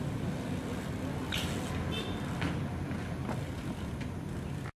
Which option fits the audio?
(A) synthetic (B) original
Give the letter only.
B